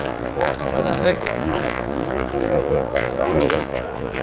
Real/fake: fake